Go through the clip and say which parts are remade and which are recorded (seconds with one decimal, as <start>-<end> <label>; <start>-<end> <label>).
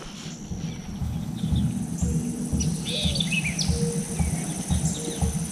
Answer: 0.0-1.0 recorded; 1.0-1.7 remade; 1.7-5.5 recorded